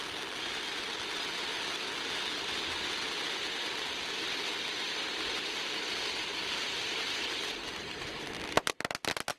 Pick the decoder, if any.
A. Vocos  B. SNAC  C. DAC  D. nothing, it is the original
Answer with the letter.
D